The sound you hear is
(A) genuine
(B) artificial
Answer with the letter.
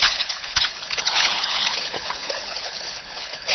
B